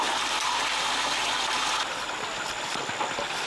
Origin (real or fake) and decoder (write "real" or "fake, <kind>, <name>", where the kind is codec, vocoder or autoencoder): real